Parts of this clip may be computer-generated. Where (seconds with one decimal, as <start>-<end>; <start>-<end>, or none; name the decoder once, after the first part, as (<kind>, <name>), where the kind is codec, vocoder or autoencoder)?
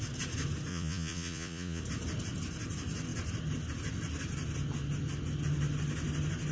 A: 0.7-1.8 (vocoder, Vocos)